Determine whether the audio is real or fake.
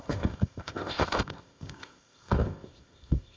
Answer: fake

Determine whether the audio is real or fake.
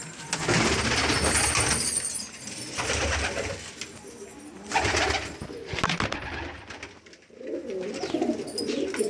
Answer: real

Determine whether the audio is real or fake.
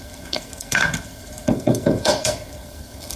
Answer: fake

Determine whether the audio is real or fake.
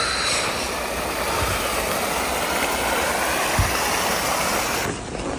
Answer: real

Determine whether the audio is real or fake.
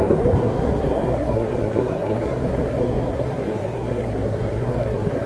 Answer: fake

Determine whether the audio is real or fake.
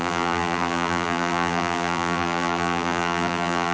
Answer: fake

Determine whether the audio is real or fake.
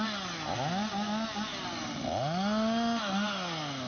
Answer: real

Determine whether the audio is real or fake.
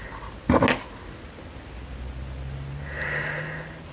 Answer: real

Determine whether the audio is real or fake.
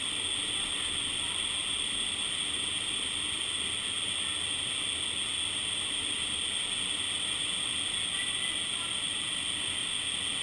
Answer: real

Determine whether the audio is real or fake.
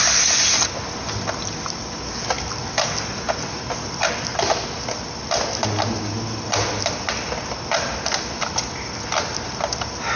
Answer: real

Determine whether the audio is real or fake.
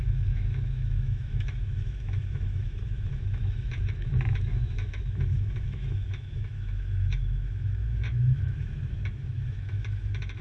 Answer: fake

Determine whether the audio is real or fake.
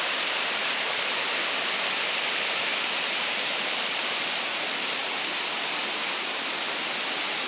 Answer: fake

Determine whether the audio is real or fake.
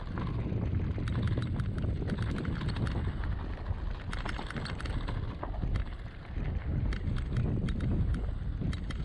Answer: real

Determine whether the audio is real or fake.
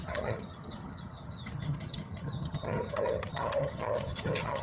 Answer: fake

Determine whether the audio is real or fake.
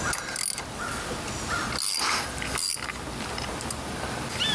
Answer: real